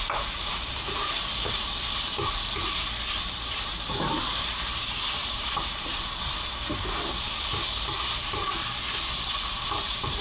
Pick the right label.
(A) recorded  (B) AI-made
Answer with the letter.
B